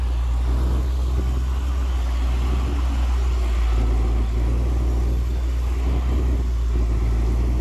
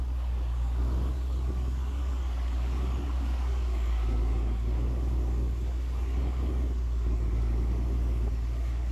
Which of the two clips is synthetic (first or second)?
second